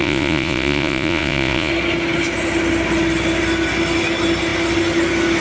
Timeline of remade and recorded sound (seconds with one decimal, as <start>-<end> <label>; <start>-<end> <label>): 0.0-1.7 remade; 1.7-5.4 recorded